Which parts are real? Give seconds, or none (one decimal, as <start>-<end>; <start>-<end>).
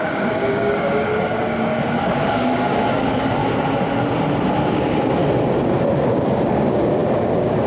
3.4-4.7; 5.2-6.5